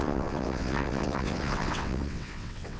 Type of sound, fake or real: fake